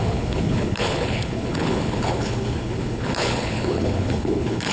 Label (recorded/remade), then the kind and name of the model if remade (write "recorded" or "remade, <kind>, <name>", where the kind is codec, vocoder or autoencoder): remade, codec, HILCodec